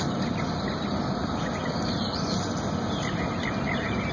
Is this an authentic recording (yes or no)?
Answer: yes